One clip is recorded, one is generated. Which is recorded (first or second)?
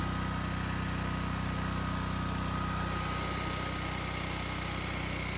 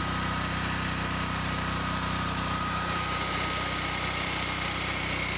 first